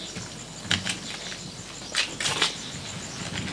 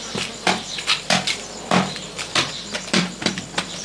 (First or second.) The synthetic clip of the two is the second